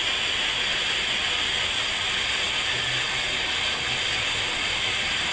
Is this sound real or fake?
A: real